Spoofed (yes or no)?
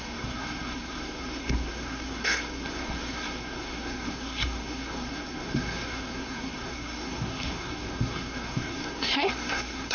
yes